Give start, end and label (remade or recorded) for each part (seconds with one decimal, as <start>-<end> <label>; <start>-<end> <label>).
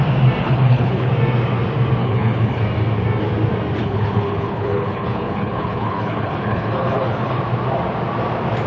0.0-0.4 recorded; 0.4-1.1 remade; 1.1-2.0 recorded; 2.0-2.6 remade; 2.6-3.8 recorded; 3.8-7.4 remade; 7.4-8.7 recorded